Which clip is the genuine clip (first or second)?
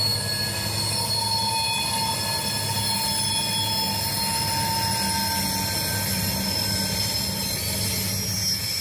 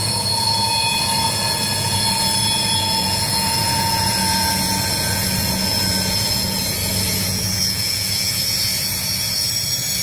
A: first